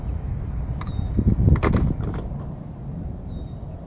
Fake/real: real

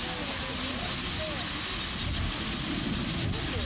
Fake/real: real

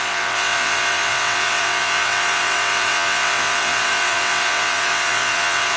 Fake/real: fake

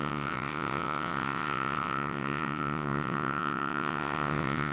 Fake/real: fake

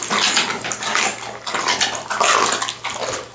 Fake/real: real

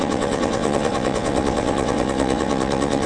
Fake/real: fake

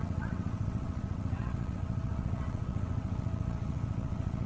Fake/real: fake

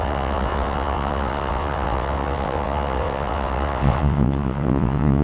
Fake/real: fake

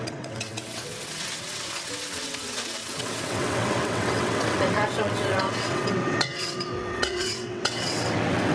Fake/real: fake